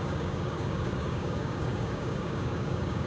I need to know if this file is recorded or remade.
remade